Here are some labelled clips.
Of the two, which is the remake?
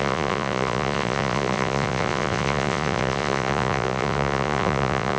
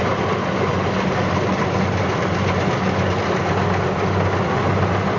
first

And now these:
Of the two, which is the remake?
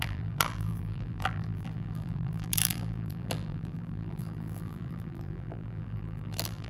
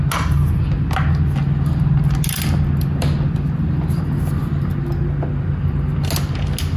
first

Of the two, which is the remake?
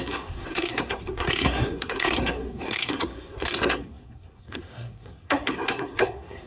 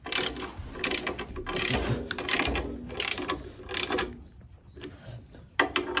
first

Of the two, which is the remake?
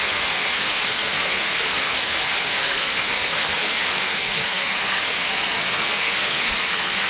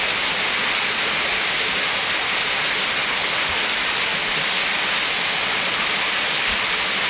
first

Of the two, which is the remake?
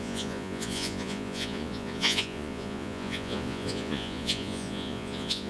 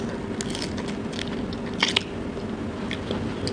first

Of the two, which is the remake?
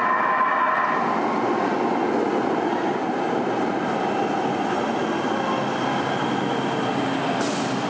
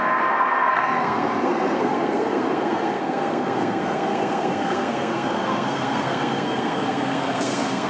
second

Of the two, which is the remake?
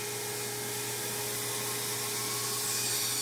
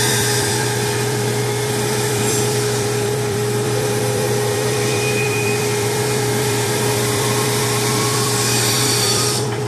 second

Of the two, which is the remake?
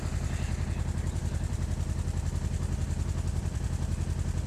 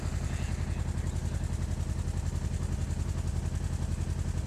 first